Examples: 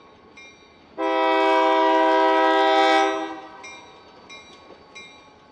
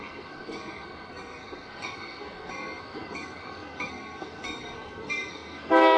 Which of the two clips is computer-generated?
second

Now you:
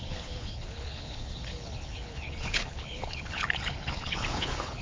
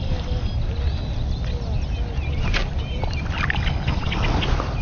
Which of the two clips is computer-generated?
first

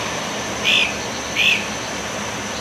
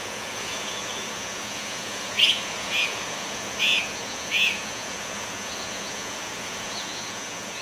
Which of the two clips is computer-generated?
second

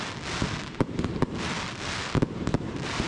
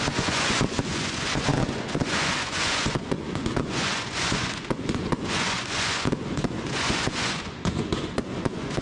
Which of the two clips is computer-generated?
second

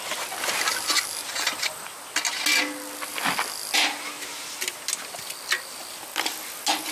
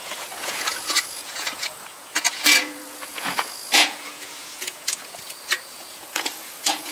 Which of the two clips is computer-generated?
second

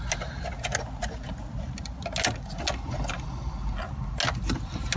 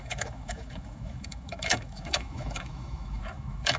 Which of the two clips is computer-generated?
second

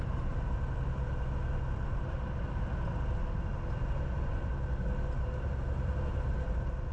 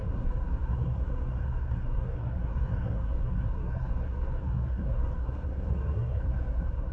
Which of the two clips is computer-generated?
second